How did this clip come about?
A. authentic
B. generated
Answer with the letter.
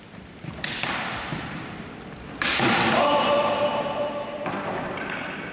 B